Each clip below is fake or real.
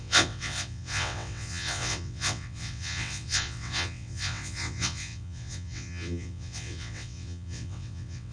fake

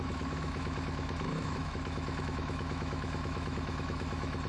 fake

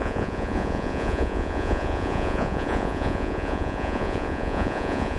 fake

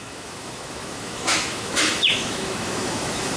fake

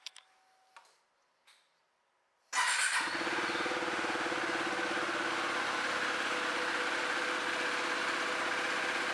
real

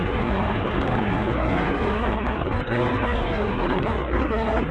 fake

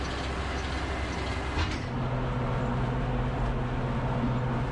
real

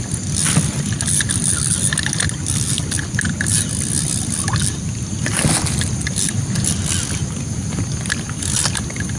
real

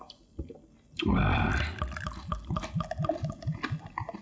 real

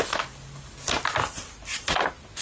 real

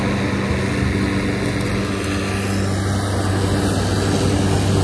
real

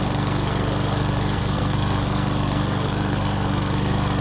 fake